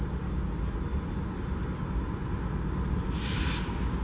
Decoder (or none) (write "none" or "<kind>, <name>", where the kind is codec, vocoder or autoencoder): none